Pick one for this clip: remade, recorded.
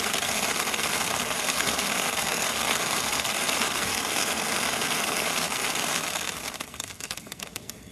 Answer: remade